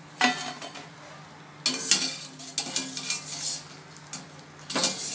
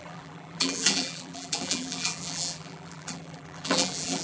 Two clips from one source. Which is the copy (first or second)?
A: second